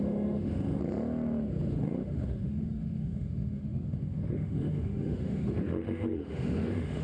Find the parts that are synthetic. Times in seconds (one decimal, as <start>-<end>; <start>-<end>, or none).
0.0-0.8; 1.7-7.0